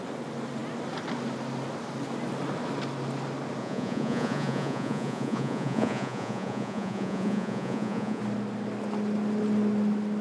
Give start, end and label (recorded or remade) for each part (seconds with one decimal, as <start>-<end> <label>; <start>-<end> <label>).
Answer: 0.0-3.6 recorded; 3.6-8.2 remade; 8.2-10.2 recorded